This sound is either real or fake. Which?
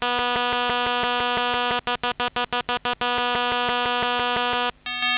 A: real